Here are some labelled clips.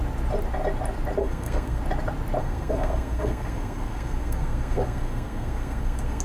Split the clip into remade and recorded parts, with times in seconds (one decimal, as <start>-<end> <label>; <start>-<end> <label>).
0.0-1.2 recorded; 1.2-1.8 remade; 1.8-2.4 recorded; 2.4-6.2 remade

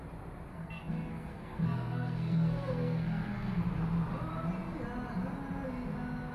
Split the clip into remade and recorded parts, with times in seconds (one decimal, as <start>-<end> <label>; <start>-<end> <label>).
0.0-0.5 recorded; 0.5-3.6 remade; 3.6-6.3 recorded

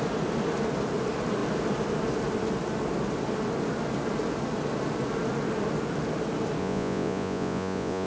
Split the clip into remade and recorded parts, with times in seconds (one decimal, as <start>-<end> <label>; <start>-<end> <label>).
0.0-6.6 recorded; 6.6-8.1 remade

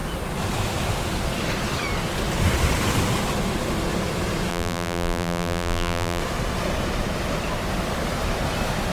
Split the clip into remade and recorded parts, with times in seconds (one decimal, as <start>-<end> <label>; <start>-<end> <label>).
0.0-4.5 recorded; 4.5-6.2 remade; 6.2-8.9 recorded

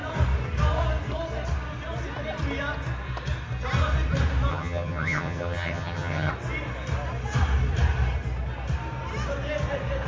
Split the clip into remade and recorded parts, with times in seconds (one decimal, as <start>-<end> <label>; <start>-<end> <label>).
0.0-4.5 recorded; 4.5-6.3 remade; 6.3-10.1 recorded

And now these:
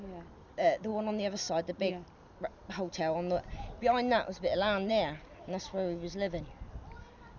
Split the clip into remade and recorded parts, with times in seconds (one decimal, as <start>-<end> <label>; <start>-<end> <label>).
0.0-7.4 recorded

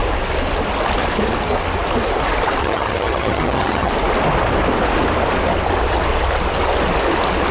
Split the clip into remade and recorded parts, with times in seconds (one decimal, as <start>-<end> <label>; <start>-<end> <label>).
0.0-2.6 recorded; 2.6-3.9 remade; 3.9-7.5 recorded

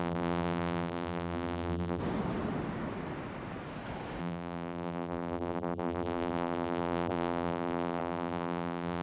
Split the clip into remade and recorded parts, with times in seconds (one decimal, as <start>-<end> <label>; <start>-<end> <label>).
0.0-2.0 remade; 2.0-4.2 recorded; 4.2-9.0 remade